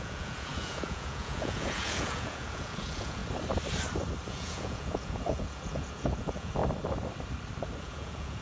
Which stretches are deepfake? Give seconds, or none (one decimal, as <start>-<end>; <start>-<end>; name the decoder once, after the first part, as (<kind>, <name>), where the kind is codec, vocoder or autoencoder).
0.0-3.2 (vocoder, Vocos); 4.3-6.6; 7.8-8.4